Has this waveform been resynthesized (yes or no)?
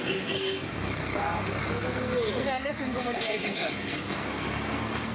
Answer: yes